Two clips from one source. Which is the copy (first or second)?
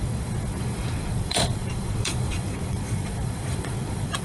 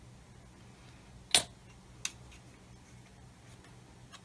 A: first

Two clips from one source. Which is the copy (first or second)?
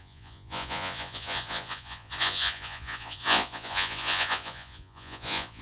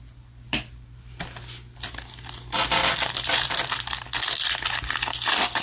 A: first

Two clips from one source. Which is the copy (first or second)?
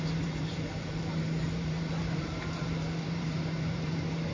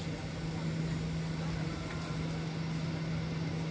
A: first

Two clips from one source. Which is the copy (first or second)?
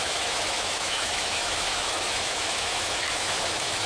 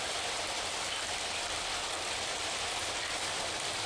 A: first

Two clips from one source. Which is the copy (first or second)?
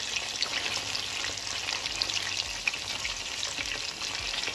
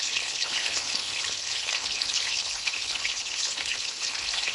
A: second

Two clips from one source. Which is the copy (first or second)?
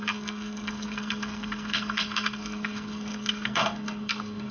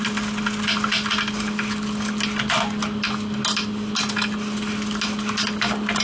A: first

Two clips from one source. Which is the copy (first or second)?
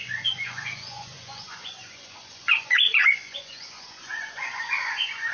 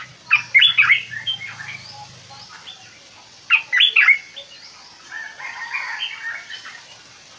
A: first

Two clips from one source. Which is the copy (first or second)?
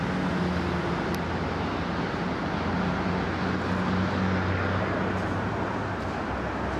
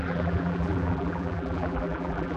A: second